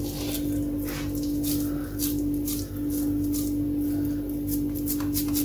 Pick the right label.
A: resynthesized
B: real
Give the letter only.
B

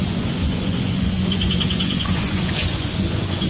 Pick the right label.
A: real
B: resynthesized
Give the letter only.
B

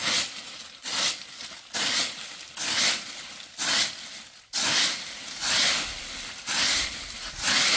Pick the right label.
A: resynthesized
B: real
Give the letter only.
B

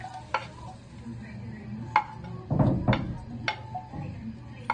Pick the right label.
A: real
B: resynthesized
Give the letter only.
A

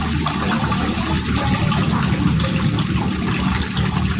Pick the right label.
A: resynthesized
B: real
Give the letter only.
B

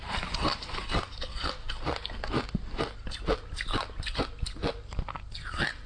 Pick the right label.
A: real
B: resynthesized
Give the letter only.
A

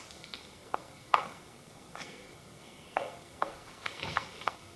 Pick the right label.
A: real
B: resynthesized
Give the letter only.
B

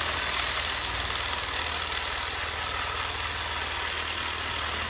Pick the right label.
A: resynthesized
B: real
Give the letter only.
B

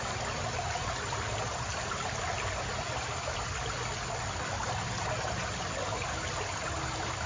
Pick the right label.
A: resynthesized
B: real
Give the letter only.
B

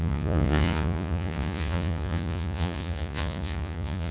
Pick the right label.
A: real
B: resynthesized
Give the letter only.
B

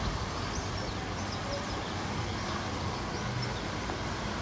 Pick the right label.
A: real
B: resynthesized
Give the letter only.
A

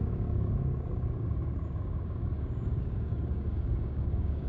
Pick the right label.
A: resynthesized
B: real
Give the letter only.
A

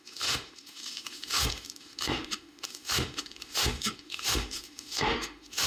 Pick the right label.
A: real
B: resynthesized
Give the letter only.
B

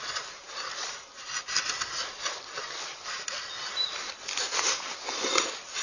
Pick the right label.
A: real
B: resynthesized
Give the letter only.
A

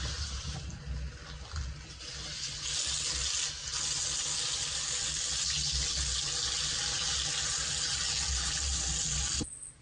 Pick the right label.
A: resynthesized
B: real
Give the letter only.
B